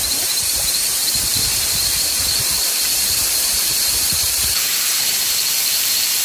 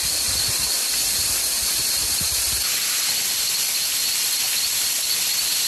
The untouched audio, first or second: second